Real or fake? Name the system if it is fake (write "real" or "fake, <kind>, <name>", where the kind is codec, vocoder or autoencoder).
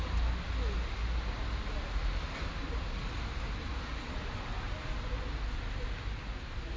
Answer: real